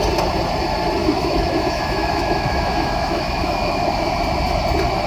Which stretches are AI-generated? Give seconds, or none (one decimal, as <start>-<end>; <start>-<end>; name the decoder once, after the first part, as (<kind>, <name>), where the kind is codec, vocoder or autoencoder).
1.0-4.1 (autoencoder, DAC-VAE)